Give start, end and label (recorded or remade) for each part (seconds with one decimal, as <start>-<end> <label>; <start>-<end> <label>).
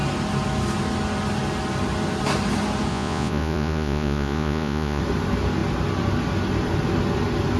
0.0-2.9 recorded; 2.9-5.0 remade; 5.0-7.6 recorded